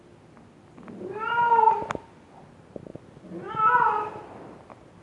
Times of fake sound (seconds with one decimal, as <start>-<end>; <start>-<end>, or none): none

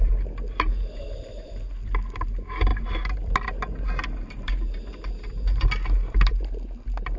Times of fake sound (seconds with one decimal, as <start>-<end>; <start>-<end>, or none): none

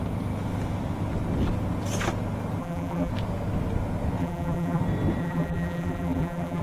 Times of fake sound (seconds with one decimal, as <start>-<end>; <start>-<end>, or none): 2.6-3.1; 4.2-4.8; 5.2-6.6

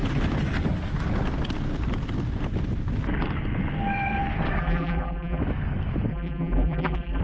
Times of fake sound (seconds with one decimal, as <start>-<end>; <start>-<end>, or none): 4.6-5.4; 6.1-7.2

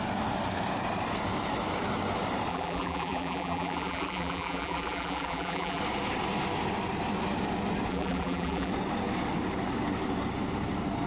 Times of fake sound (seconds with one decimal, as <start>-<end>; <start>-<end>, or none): 2.5-5.8; 7.9-8.7

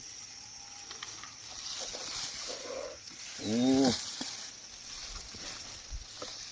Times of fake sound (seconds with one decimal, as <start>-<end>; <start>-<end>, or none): 2.6-3.2

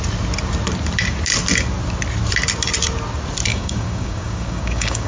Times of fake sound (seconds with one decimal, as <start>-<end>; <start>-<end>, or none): 3.5-5.1

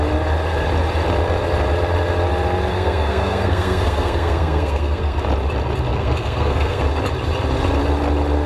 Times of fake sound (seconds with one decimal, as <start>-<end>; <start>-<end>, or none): 2.7-5.2; 5.9-6.8